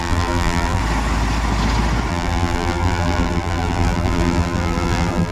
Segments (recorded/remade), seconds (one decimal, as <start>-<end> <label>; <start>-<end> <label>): 0.0-0.8 remade; 0.8-2.1 recorded; 2.1-5.3 remade